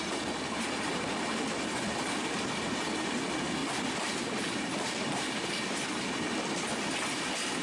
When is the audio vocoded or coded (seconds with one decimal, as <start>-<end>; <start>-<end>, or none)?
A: none